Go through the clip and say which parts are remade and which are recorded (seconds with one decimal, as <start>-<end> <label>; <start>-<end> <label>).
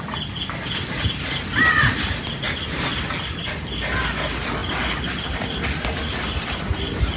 0.0-7.2 recorded